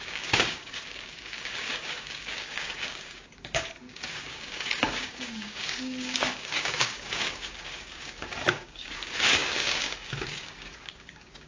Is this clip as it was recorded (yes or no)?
no